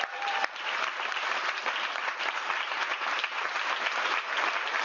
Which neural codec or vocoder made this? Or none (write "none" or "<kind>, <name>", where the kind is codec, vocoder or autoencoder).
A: none